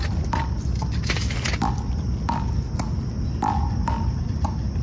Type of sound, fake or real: real